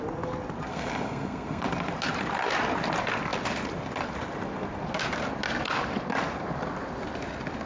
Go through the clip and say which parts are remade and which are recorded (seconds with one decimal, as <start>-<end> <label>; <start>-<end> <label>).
0.0-0.7 recorded; 0.7-1.6 remade; 1.6-7.7 recorded